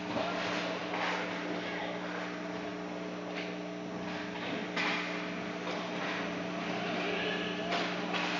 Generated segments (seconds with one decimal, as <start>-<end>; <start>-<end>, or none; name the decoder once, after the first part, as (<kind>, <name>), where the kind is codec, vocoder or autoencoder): none

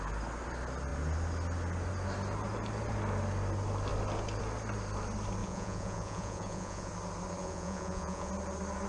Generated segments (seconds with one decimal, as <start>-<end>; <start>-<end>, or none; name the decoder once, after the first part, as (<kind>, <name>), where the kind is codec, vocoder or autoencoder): 5.4-6.9 (vocoder, Vocos); 7.4-8.3

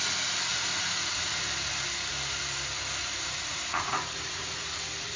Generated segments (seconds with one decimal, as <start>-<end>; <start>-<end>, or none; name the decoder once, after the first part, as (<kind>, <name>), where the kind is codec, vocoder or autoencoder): 0.5-1.4 (vocoder, Vocos); 3.0-4.8